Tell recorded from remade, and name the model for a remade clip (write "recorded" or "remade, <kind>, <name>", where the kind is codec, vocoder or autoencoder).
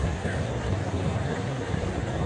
remade, codec, SNAC